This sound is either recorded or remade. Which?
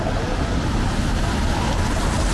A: recorded